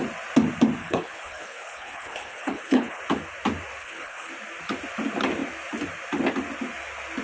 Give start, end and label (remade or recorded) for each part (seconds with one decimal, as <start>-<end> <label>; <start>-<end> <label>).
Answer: 0.0-0.8 recorded; 0.8-3.0 remade; 3.0-3.8 recorded; 3.8-4.3 remade; 4.3-7.2 recorded